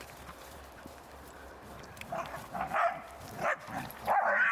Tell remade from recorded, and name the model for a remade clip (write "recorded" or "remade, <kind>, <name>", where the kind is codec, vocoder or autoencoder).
remade, vocoder, BigVGAN v2